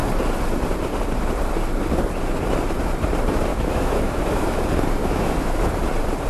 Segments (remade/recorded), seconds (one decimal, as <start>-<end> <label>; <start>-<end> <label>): 0.0-3.5 recorded; 3.5-4.6 remade; 4.6-5.0 recorded; 5.0-5.6 remade; 5.6-6.3 recorded